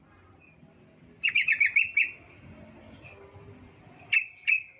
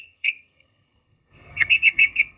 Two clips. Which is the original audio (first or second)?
first